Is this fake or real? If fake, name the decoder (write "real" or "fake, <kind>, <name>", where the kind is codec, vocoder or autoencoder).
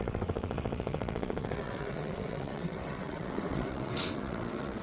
fake, vocoder, WaveNeXt